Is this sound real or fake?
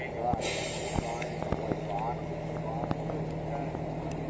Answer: real